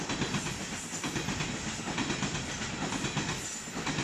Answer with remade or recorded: recorded